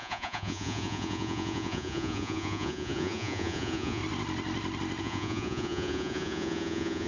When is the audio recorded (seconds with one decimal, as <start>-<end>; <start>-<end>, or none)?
4.0-5.0

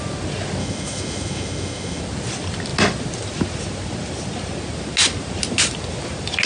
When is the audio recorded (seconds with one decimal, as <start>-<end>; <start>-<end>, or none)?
0.0-0.6; 2.0-6.5

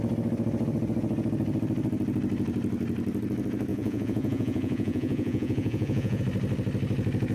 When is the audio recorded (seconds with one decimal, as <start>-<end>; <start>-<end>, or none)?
0.0-3.7; 6.2-7.3

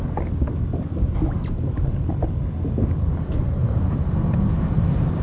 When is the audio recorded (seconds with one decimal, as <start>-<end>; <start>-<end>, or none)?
0.0-3.4

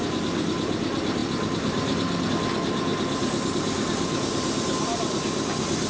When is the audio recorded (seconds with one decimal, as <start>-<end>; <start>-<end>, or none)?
0.0-5.9

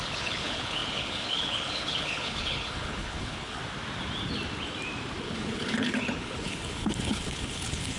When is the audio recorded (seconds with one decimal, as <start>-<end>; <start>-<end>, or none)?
3.6-5.2

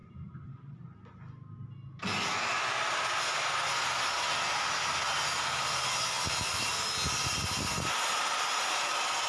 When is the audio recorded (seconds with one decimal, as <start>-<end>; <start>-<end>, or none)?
0.0-9.3

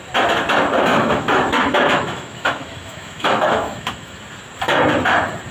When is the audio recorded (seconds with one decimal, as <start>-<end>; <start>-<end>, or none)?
0.0-0.9; 4.2-5.5